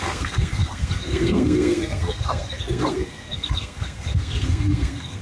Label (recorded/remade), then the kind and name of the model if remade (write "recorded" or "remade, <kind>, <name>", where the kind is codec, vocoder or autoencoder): remade, codec, SNAC